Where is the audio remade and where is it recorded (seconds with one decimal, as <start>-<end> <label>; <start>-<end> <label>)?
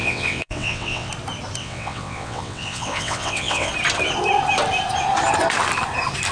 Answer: 0.0-1.1 remade; 1.1-1.6 recorded; 1.6-3.7 remade; 3.7-6.3 recorded